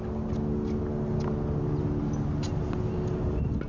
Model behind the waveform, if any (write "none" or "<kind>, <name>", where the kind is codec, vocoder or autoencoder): none